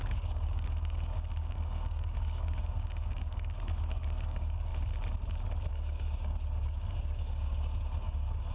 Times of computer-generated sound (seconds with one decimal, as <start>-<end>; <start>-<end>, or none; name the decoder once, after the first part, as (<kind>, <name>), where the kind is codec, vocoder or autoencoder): 0.0-4.7 (codec, DAC); 5.7-8.5

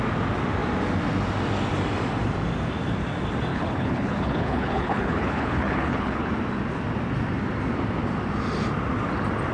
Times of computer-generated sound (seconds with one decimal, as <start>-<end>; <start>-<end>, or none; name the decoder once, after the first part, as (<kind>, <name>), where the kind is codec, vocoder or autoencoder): 3.5-6.3 (codec, HILCodec)